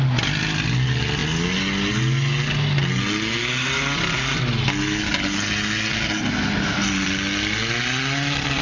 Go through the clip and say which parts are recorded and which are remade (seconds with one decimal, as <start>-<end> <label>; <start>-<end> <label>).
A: 0.0-8.6 recorded